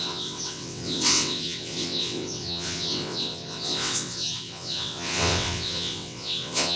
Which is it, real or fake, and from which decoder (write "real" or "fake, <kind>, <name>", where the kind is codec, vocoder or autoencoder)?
fake, vocoder, WaveNeXt